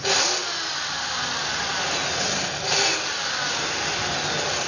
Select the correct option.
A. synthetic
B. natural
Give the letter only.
B